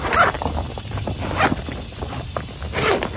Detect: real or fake fake